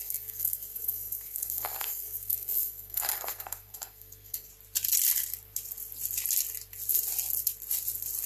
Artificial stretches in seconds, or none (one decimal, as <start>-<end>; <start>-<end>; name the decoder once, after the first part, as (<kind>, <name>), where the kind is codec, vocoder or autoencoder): 0.0-4.5 (codec, SNAC)